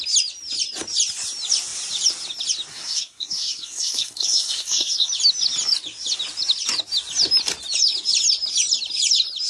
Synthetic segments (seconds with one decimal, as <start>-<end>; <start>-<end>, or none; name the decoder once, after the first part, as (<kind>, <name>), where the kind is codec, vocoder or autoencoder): 2.7-5.1 (codec, SNAC)